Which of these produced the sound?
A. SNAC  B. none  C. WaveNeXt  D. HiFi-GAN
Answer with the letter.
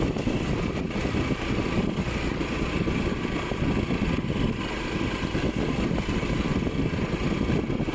B